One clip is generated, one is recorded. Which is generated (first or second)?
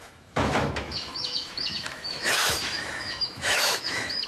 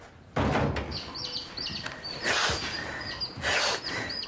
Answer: first